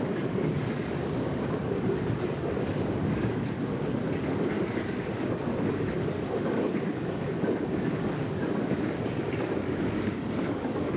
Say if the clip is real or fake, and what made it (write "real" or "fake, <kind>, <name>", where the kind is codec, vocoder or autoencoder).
fake, codec, DAC